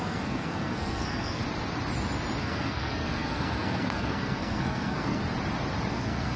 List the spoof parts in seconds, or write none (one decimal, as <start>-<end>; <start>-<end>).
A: 0.0-1.4; 2.4-5.2; 5.9-6.4